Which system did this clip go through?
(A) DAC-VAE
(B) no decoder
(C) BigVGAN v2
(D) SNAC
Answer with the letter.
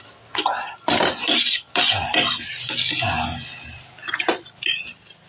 B